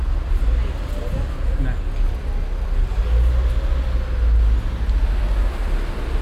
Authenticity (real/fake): real